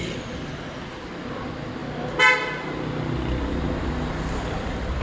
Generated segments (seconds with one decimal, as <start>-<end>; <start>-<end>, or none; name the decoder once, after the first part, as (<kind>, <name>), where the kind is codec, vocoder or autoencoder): none